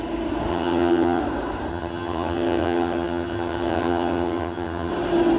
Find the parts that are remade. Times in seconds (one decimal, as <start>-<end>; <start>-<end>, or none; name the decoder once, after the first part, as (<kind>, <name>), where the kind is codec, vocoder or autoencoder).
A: 0.5-1.2 (vocoder, HiFi-GAN); 1.7-4.9